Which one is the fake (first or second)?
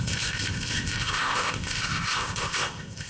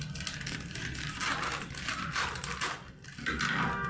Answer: first